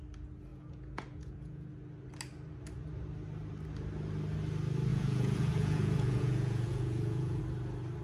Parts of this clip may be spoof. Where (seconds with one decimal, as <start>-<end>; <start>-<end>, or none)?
0.5-1.7; 4.9-7.4